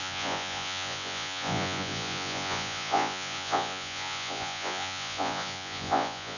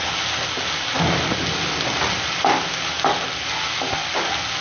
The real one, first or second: second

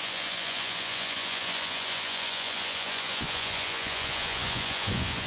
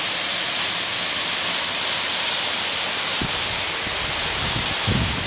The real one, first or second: second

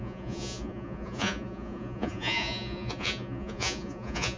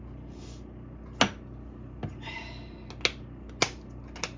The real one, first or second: second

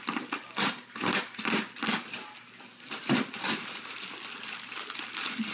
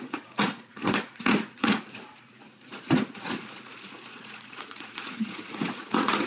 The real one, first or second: first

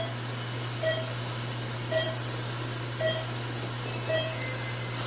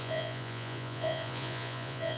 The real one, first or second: first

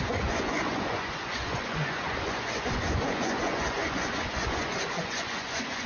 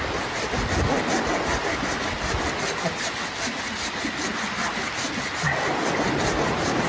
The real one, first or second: second